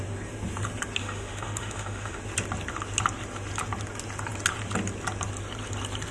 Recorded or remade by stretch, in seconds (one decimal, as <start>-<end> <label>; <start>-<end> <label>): 0.0-1.0 recorded; 1.0-2.2 remade; 2.2-6.1 recorded